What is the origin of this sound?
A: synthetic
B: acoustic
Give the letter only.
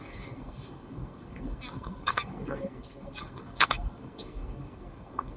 A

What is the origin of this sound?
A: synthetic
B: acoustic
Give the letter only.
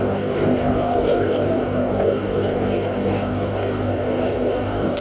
A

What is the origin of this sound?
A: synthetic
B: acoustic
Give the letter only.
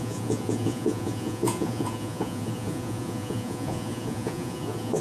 A